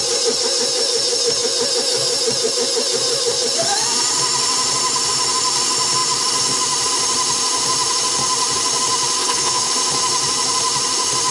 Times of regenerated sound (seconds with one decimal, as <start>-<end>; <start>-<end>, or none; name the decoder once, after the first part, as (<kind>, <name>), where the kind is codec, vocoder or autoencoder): 9.2-9.7 (codec, HILCodec)